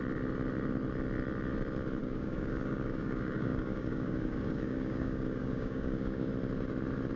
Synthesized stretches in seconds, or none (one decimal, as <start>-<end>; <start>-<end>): 2.0-6.3